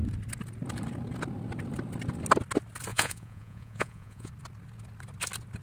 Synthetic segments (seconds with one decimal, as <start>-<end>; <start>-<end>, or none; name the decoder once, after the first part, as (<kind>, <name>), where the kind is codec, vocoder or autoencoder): 2.9-4.3 (vocoder, Vocos)